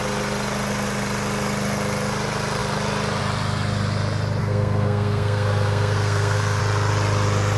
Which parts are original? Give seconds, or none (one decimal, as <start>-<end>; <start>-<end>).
0.0-4.4; 6.6-7.6